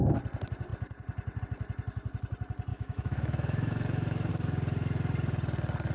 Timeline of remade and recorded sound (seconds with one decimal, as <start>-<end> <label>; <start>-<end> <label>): 0.0-2.7 recorded; 2.7-4.3 remade; 4.3-5.9 recorded